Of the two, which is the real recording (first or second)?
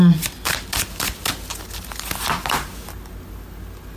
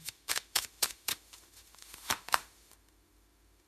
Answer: first